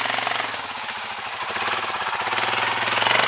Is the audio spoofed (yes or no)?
no